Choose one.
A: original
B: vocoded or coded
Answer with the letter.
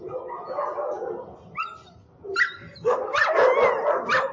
A